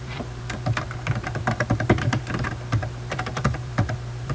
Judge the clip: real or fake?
fake